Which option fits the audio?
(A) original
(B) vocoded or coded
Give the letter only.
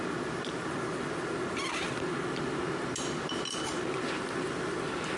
A